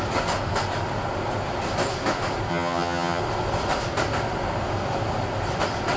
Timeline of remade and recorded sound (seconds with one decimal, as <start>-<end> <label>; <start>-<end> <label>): 0.0-2.5 recorded; 2.5-3.2 remade; 3.2-6.0 recorded